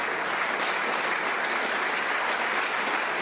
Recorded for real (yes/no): yes